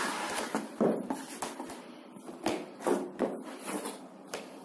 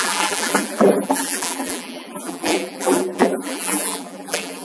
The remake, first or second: second